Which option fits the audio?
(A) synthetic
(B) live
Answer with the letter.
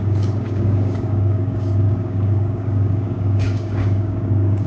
A